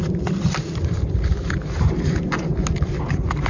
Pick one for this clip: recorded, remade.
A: recorded